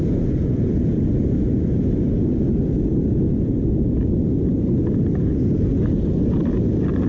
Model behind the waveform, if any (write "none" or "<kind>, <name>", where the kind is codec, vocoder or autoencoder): none